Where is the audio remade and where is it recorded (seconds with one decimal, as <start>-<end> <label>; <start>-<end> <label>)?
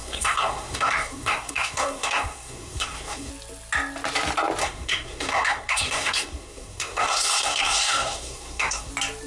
0.0-3.3 remade; 3.3-4.6 recorded; 4.6-8.9 remade; 8.9-9.3 recorded